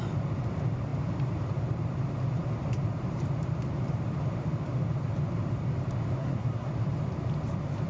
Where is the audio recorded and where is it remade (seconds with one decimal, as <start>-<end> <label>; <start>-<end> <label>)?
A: 0.0-6.2 recorded; 6.2-6.7 remade; 6.7-7.9 recorded

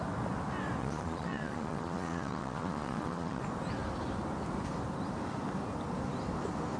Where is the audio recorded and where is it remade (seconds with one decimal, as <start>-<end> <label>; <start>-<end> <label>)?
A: 0.0-0.8 recorded; 0.8-3.4 remade; 3.4-6.8 recorded

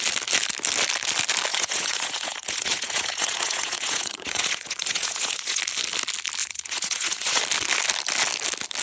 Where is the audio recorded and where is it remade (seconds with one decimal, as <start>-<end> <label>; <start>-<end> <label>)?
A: 0.0-1.5 recorded; 1.5-5.6 remade; 5.6-6.4 recorded; 6.4-7.4 remade; 7.4-8.8 recorded

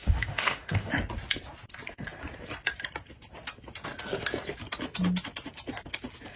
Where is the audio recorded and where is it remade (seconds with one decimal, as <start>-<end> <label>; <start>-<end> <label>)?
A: 0.0-0.9 remade; 0.9-6.4 recorded

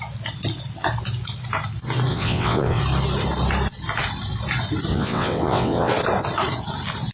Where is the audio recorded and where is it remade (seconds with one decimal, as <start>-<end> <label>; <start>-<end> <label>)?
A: 0.0-2.1 recorded; 2.1-2.8 remade; 2.8-4.9 recorded; 4.9-5.9 remade; 5.9-7.1 recorded